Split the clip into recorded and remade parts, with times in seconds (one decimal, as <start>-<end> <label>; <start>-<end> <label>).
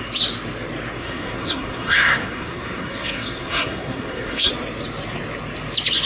0.0-1.0 recorded; 1.0-4.5 remade; 4.5-6.1 recorded